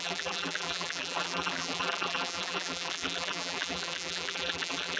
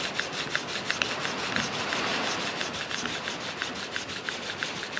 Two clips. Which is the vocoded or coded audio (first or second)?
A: first